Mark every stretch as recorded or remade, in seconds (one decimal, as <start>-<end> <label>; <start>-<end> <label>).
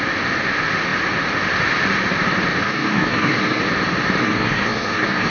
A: 0.0-2.6 recorded; 2.6-3.6 remade; 3.6-4.2 recorded; 4.2-5.3 remade